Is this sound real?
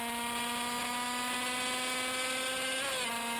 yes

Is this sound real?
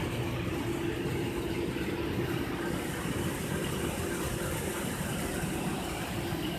yes